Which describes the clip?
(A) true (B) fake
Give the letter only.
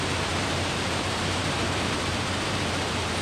B